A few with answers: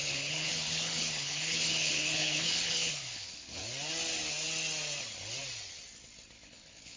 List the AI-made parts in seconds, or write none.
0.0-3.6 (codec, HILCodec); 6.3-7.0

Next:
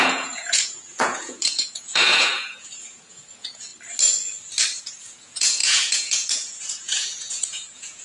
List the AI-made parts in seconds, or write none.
0.0-3.7 (vocoder, Vocos); 4.8-8.0

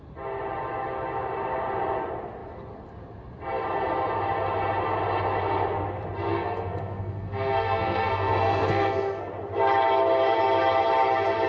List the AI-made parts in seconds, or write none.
6.3-9.3 (codec, SNAC)

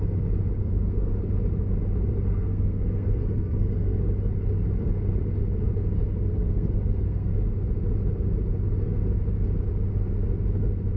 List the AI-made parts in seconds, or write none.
0.6-1.2 (codec, SNAC); 2.4-4.0; 6.3-7.3

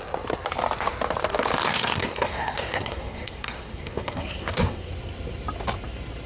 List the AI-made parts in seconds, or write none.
1.6-4.9 (codec, SNAC)

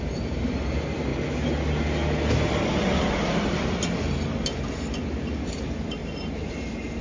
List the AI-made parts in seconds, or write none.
0.0-1.1 (vocoder, BigVGAN v2); 5.0-7.0